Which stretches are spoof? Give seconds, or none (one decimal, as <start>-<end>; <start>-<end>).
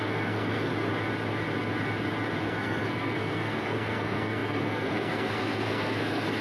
0.0-0.7; 2.4-6.4